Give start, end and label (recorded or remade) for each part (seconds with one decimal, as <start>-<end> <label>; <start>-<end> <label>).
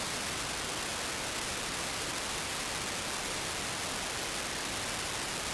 0.0-5.5 recorded